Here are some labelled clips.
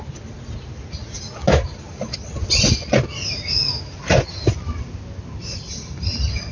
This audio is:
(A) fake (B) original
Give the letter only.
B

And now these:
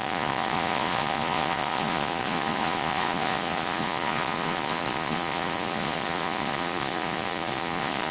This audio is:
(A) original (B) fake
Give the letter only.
B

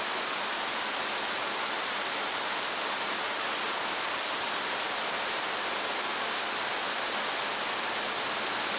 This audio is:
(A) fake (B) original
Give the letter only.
B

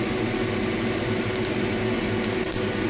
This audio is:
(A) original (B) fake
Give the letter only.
A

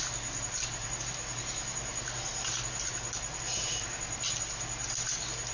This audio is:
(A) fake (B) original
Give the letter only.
B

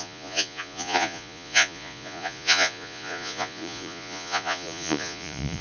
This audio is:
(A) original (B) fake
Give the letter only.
B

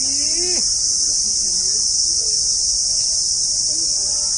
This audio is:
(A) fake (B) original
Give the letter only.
B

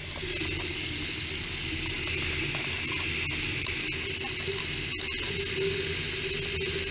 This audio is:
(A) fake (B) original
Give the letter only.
B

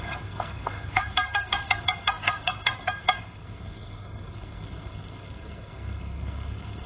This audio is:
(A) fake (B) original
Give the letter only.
A